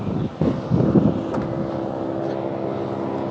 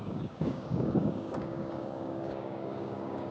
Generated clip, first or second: second